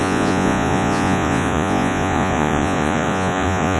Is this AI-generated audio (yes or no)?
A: yes